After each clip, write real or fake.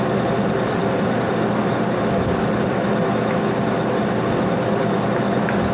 real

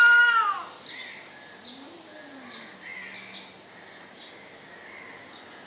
real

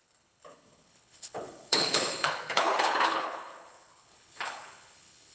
fake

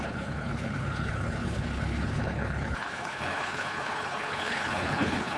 fake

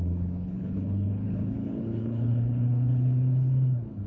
fake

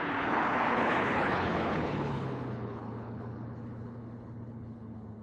fake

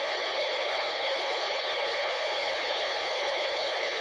fake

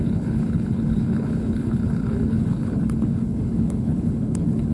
fake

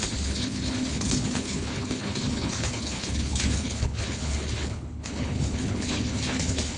fake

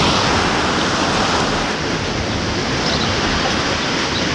real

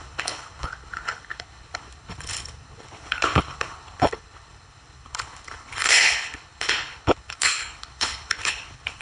fake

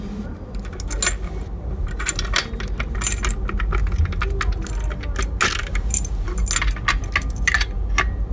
real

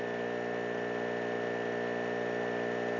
real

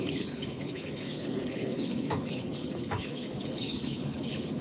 fake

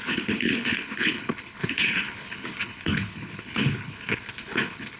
fake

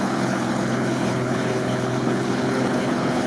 fake